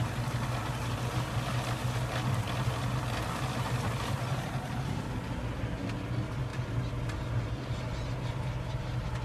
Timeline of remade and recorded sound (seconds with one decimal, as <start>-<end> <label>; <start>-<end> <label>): 0.0-9.2 recorded